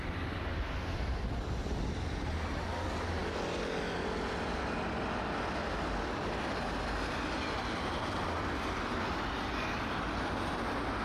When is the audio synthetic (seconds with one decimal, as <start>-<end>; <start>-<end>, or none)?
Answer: none